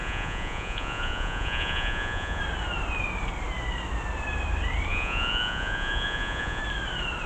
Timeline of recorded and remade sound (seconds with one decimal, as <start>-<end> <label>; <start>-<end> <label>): 0.0-2.4 remade; 2.4-4.9 recorded; 4.9-6.6 remade; 6.6-7.3 recorded